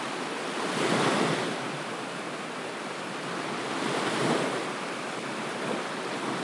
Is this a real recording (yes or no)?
yes